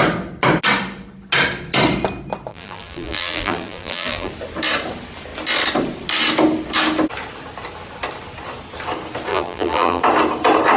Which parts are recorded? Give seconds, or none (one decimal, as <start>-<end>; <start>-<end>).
0.0-2.5; 4.3-9.3; 10.0-10.8